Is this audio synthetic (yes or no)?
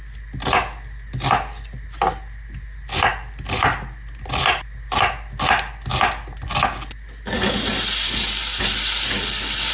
no